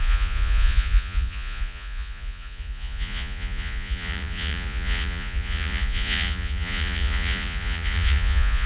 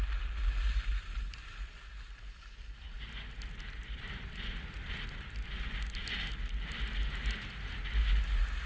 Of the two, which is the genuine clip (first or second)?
second